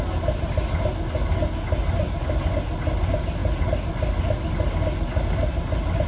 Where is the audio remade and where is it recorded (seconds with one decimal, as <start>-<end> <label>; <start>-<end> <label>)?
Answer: 0.0-6.1 recorded

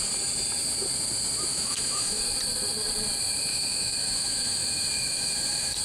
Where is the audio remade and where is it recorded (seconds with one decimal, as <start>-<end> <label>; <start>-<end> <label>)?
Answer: 0.0-1.5 recorded; 1.5-2.2 remade; 2.2-3.5 recorded; 3.5-5.8 remade

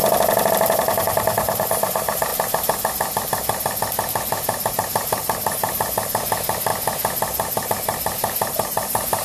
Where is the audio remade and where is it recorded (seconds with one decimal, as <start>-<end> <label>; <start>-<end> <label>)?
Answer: 0.0-0.5 recorded; 0.5-2.3 remade; 2.3-4.7 recorded; 4.7-6.7 remade; 6.7-7.7 recorded; 7.7-9.2 remade

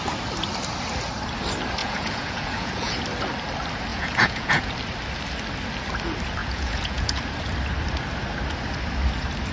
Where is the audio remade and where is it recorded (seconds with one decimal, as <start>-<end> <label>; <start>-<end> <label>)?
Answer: 0.0-1.8 recorded; 1.8-2.9 remade; 2.9-3.9 recorded; 3.9-4.7 remade; 4.7-6.4 recorded; 6.4-7.2 remade; 7.2-9.5 recorded

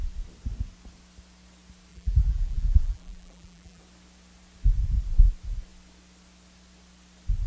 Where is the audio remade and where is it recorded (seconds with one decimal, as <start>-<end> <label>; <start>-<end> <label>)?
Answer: 0.0-1.9 recorded; 1.9-3.8 remade; 3.8-7.5 recorded

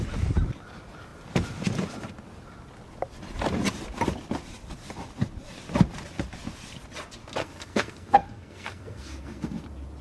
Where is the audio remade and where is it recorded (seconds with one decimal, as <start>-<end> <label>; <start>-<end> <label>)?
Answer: 0.0-7.4 recorded; 7.4-9.6 remade; 9.6-10.0 recorded

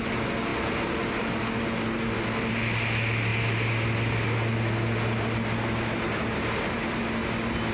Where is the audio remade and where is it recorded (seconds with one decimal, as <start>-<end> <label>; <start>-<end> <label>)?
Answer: 0.0-7.7 recorded

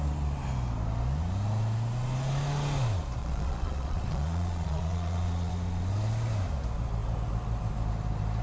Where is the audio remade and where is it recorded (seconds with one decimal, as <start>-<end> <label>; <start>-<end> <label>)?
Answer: 0.0-3.2 recorded; 3.2-5.5 remade; 5.5-8.4 recorded